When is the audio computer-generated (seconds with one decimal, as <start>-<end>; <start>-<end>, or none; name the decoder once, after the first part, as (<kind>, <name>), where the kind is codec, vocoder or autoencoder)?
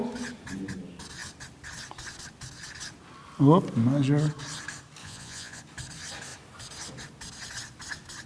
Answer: 5.0-5.6 (vocoder, Vocos)